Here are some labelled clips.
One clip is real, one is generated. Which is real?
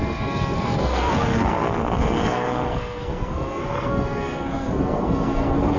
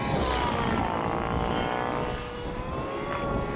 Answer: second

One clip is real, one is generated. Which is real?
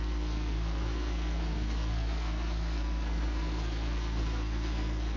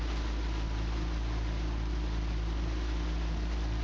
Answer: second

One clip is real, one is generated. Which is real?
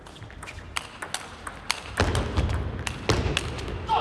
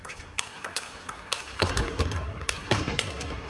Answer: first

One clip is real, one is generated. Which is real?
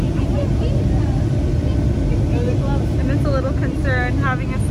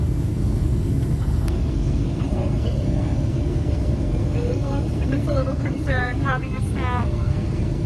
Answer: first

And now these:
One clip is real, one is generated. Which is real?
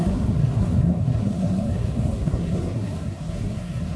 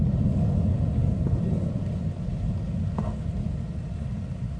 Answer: second